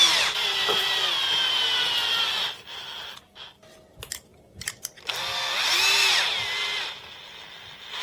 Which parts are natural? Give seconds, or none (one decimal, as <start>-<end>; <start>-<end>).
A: 0.0-8.0